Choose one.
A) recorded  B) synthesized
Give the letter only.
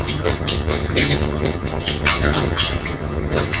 B